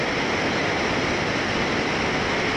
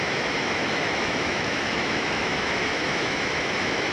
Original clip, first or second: first